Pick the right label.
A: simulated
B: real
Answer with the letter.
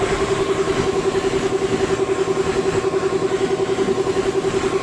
B